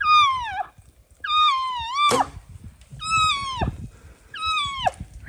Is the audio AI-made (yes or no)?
no